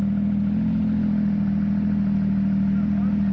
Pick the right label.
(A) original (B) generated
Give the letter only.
A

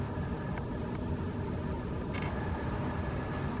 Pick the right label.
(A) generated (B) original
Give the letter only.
B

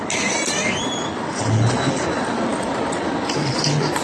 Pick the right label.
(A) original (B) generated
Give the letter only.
A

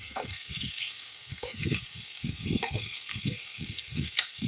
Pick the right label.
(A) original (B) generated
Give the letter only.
B